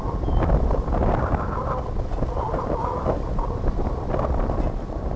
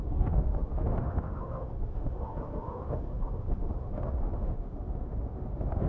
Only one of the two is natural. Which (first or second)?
first